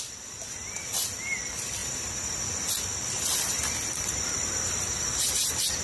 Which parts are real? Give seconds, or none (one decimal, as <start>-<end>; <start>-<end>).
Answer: none